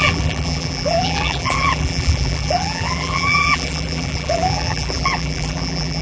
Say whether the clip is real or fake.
fake